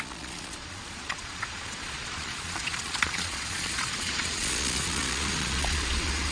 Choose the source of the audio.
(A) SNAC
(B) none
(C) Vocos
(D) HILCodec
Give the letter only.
C